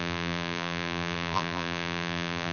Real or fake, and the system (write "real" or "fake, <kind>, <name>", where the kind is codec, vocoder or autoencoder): fake, vocoder, BigVGAN v2